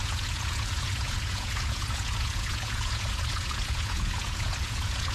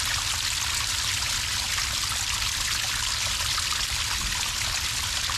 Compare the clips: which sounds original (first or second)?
second